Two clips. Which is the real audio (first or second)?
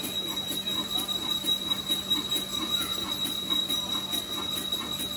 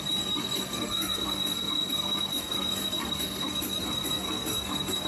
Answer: first